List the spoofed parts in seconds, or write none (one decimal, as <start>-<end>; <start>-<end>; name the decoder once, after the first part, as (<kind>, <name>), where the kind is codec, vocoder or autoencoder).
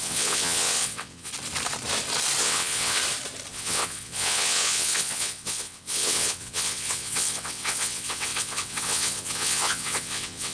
0.0-1.3 (vocoder, WaveNeXt); 2.4-3.0; 3.5-10.5